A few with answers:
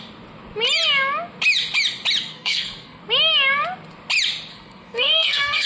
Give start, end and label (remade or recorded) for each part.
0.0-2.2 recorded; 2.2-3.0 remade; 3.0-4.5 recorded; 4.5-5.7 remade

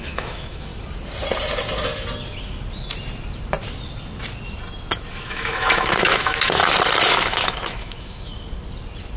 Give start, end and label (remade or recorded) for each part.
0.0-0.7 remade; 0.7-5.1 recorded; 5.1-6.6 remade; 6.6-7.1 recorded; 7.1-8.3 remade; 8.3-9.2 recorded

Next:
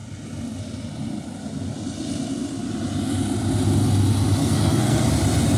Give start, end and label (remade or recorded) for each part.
0.0-4.4 recorded; 4.4-5.1 remade; 5.1-5.6 recorded

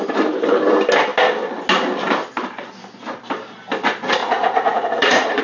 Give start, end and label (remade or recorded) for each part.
0.0-4.2 recorded; 4.2-5.4 remade

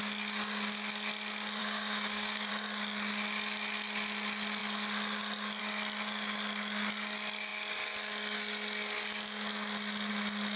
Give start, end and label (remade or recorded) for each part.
0.0-1.6 recorded; 1.6-2.5 remade; 2.5-10.6 recorded